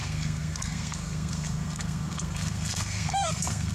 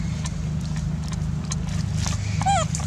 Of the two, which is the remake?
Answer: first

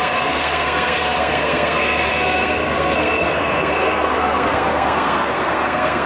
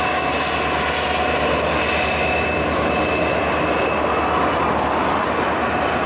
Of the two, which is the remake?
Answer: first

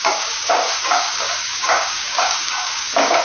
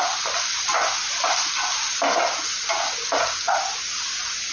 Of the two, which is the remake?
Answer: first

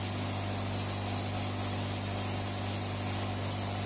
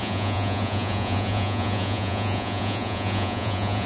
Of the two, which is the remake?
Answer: second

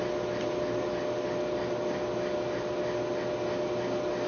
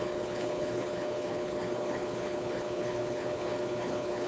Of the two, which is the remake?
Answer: second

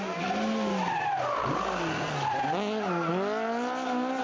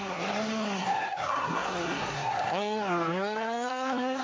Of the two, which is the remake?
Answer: second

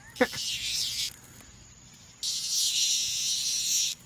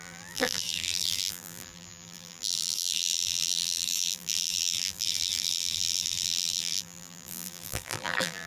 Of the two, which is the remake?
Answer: second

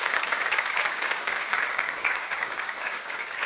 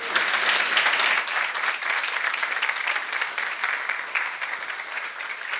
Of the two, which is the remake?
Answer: first